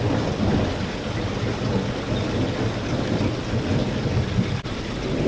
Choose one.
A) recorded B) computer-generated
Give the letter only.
A